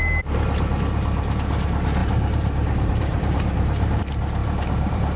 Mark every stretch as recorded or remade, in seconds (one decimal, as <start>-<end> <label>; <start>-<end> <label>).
0.0-2.0 recorded; 2.0-4.0 remade; 4.0-4.4 recorded; 4.4-5.2 remade